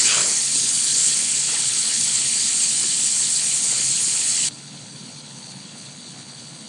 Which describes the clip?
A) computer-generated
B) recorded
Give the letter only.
A